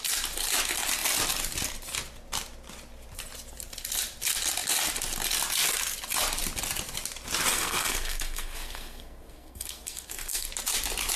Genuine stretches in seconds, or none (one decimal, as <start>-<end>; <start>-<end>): 0.0-7.5; 10.5-11.2